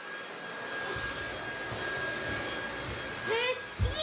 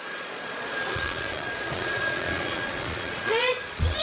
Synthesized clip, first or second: second